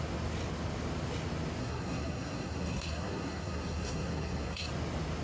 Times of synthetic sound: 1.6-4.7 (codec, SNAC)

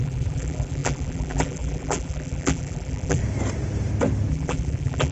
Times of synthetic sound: 0.0-3.2 (vocoder, BigVGAN v2); 4.3-5.1

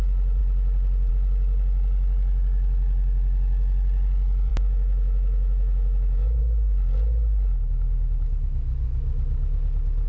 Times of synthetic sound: 4.5-6.4 (autoencoder, DAC-VAE)

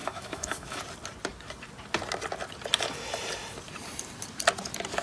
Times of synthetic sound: 0.0-0.8 (autoencoder, DAC-VAE)

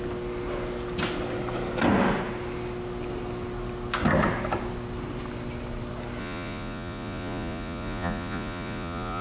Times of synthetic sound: 6.2-9.2 (vocoder, Vocos)

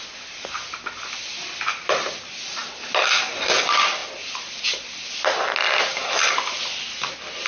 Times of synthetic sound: none

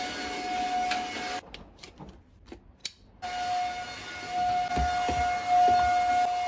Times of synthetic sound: none

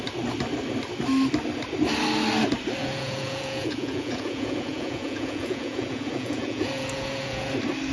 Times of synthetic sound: 2.8-7.5 (vocoder, Vocos)